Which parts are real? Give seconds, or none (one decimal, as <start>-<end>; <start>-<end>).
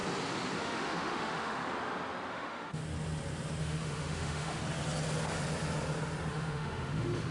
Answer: 0.0-0.6; 1.6-2.3; 2.8-3.6; 4.6-6.3